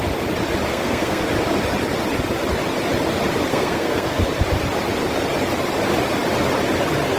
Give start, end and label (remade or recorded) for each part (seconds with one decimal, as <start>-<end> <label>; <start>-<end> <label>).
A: 0.0-0.7 recorded; 0.7-1.2 remade; 1.2-3.5 recorded; 3.5-4.2 remade; 4.2-7.2 recorded